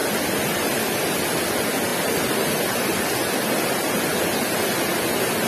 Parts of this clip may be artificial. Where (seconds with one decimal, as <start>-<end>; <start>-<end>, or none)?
none